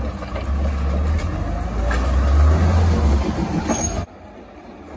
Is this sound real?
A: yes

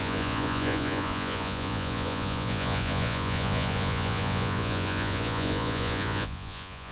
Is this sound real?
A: no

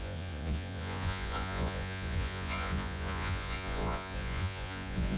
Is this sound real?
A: no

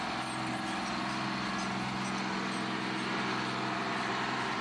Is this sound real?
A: yes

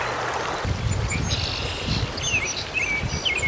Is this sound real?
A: yes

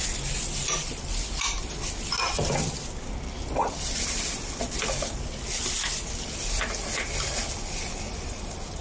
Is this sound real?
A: yes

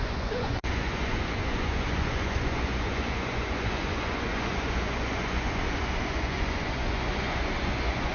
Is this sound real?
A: no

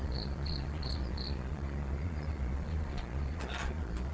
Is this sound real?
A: no